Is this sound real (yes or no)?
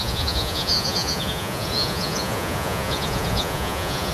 no